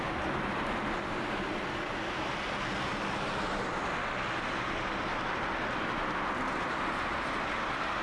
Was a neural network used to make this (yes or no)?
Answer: no